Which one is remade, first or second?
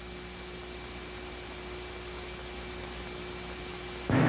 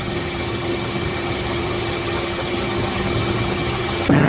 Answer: second